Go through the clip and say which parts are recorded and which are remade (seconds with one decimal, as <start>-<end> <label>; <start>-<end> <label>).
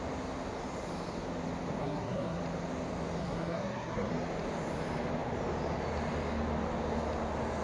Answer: 0.0-1.8 recorded; 1.8-2.4 remade; 2.4-3.2 recorded; 3.2-4.1 remade; 4.1-7.6 recorded